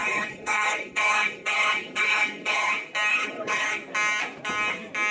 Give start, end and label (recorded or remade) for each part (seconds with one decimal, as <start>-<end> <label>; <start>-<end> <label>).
0.0-2.7 remade; 2.7-3.1 recorded; 3.1-3.8 remade; 3.8-5.1 recorded